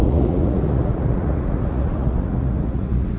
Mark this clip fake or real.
fake